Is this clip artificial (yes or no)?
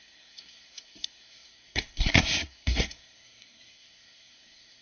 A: yes